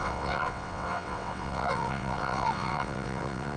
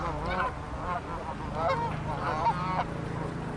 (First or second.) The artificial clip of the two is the first